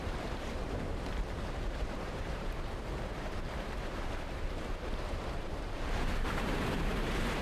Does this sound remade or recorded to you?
remade